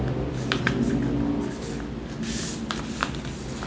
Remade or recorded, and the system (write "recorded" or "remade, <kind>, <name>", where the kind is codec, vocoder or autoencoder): recorded